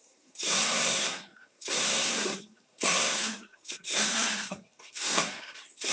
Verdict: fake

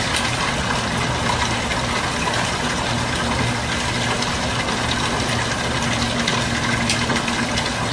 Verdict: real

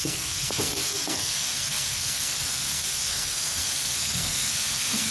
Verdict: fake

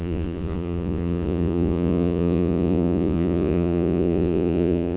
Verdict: fake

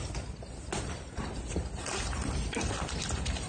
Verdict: real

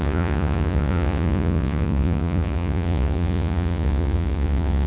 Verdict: fake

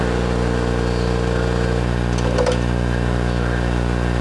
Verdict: real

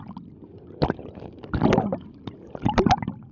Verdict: real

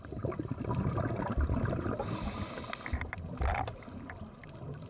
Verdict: real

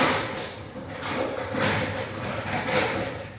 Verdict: real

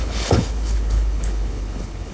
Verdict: fake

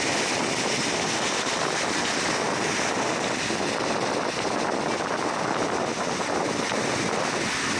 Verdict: real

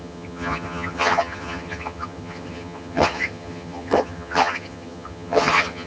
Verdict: fake